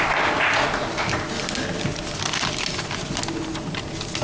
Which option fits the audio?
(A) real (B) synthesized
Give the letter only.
A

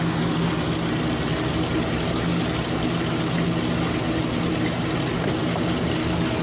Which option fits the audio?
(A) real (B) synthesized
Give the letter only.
A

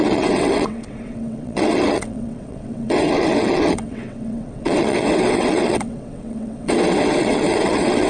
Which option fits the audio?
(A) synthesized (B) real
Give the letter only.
A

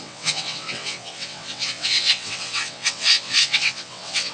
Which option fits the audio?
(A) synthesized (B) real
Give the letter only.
A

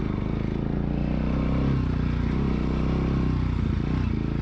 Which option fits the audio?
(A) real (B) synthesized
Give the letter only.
A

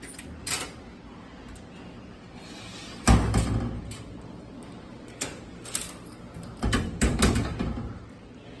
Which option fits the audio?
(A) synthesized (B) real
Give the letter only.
B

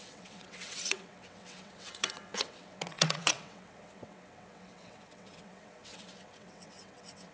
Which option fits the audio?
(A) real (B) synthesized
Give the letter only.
B